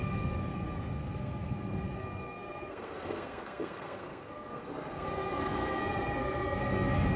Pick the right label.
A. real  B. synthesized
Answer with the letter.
B